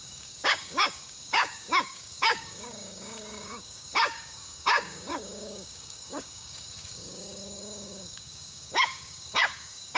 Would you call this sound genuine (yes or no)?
no